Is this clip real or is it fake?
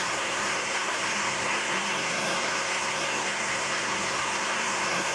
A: fake